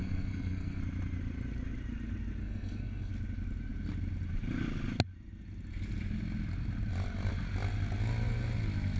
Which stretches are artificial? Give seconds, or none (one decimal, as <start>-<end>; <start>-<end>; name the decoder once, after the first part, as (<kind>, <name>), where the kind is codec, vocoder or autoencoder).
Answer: 0.0-0.8 (codec, SNAC); 2.4-3.1